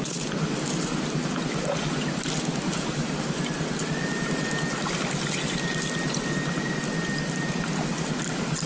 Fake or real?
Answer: real